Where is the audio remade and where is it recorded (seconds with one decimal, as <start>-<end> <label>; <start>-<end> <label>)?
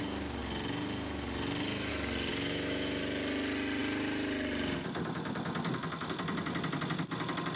0.0-2.3 recorded; 2.3-3.0 remade; 3.0-7.6 recorded